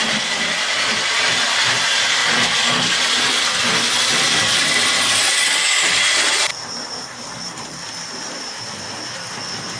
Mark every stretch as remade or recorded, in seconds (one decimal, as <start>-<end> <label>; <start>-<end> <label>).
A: 0.0-2.2 recorded; 2.2-3.1 remade; 3.1-6.5 recorded; 6.5-8.8 remade; 8.8-9.8 recorded